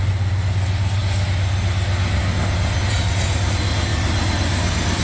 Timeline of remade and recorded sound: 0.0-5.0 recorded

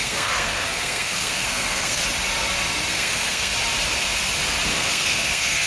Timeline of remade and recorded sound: 0.0-2.0 remade; 2.0-2.9 recorded; 2.9-3.5 remade; 3.5-4.7 recorded; 4.7-5.7 remade

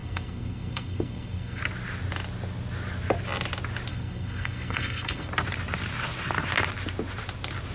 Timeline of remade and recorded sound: 0.0-1.6 remade; 1.6-3.9 recorded; 3.9-5.3 remade; 5.3-7.7 recorded

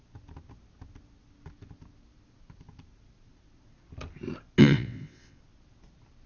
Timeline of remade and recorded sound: 0.0-4.6 recorded; 4.6-5.4 remade; 5.4-6.3 recorded

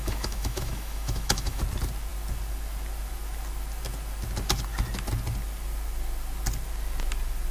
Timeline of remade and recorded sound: 0.0-1.6 remade; 1.6-7.5 recorded

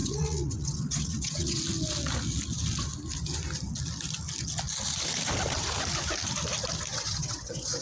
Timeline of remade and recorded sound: 0.0-1.6 remade; 1.6-6.9 recorded; 6.9-7.8 remade

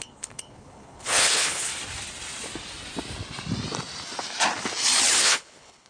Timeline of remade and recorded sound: 0.0-1.7 remade; 1.7-5.2 recorded; 5.2-5.9 remade

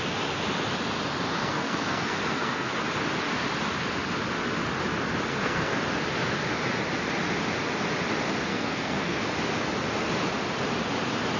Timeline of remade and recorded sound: 0.0-1.4 recorded; 1.4-2.7 remade; 2.7-5.3 recorded; 5.3-5.8 remade; 5.8-8.5 recorded; 8.5-9.2 remade; 9.2-11.4 recorded